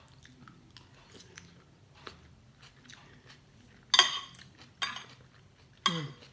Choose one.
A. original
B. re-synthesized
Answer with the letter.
A